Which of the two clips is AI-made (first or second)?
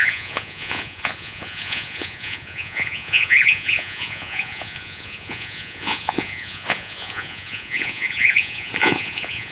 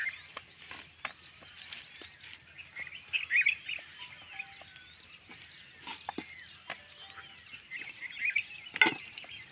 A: first